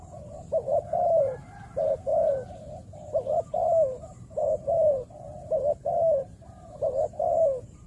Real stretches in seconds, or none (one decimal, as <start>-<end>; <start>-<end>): none